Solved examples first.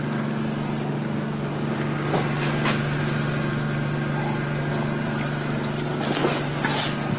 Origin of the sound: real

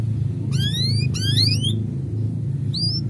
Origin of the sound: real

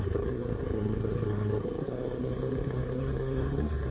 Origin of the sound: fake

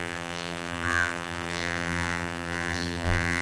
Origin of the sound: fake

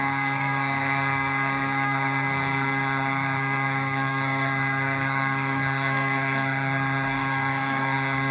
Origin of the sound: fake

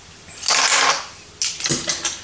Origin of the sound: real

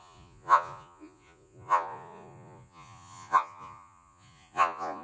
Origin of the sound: fake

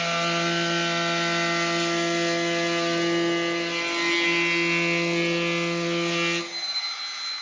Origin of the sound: real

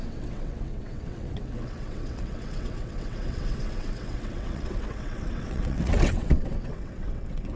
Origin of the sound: fake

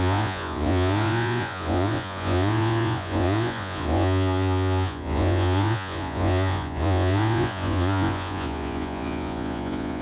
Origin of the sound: fake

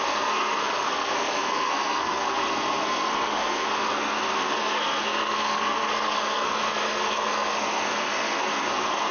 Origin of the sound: fake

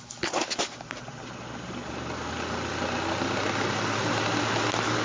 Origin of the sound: real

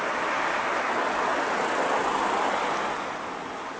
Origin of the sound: real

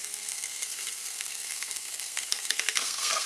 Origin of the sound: fake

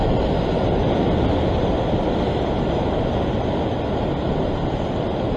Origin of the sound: real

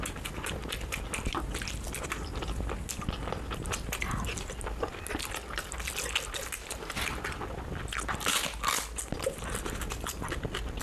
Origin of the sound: real